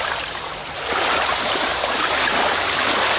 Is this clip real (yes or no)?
yes